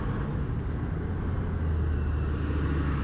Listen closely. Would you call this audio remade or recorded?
recorded